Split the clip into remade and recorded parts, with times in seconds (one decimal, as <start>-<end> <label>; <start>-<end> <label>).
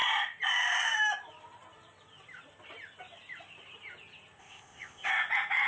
0.0-4.4 recorded; 4.4-5.1 remade; 5.1-5.7 recorded